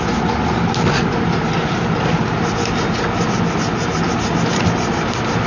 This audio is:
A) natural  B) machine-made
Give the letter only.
A